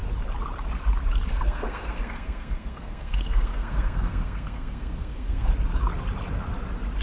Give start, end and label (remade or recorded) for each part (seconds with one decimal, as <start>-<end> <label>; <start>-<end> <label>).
0.0-1.3 recorded; 1.3-5.5 remade; 5.5-7.0 recorded